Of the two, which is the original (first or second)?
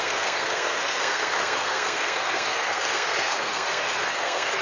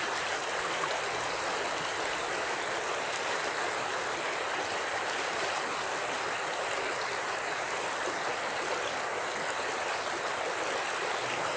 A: second